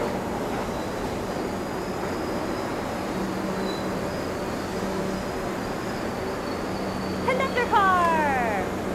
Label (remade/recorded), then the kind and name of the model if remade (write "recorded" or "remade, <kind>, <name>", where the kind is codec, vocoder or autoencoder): recorded